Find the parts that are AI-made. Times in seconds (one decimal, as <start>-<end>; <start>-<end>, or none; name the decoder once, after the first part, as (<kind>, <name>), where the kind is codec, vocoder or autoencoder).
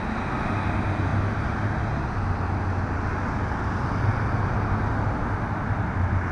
none